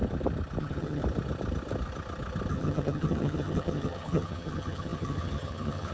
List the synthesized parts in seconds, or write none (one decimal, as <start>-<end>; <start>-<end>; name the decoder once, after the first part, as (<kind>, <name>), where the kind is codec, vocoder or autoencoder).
0.6-1.0 (vocoder, HiFi-GAN); 2.5-5.9